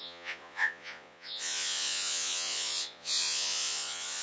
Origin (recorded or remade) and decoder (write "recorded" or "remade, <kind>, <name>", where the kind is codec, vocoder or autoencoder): remade, vocoder, Vocos